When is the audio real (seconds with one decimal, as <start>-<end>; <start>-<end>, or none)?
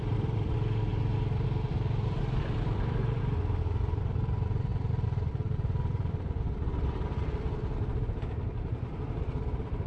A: 0.9-1.6; 4.7-9.9